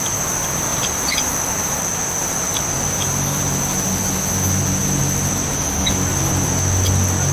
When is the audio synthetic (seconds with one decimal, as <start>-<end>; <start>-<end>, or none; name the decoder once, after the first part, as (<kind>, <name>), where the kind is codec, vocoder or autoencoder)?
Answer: 0.7-1.8 (vocoder, BigVGAN v2)